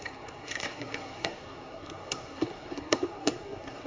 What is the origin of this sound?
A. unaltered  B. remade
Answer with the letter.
B